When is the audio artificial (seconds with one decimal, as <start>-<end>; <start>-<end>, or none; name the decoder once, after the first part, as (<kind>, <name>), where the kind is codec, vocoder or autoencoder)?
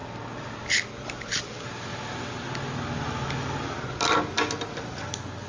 none